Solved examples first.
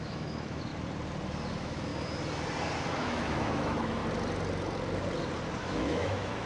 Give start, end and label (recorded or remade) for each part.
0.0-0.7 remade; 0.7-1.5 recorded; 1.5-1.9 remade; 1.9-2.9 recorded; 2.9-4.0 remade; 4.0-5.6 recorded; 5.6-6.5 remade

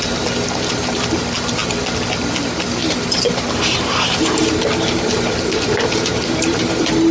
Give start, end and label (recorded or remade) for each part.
0.0-2.8 recorded; 2.8-7.1 remade

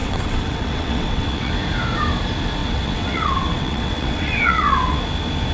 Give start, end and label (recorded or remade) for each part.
0.0-1.5 remade; 1.5-2.6 recorded; 2.6-5.0 remade; 5.0-5.5 recorded

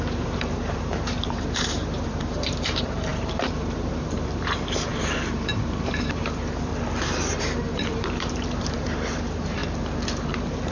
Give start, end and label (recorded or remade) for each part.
0.0-6.7 remade; 6.7-7.4 recorded; 7.4-9.6 remade; 9.6-10.7 recorded